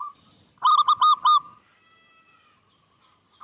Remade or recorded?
recorded